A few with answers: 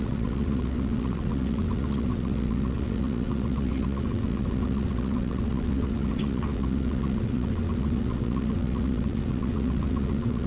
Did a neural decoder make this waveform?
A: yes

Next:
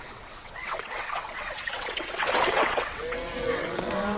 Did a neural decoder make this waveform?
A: yes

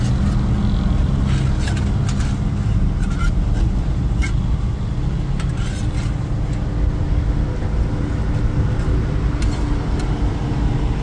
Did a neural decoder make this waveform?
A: no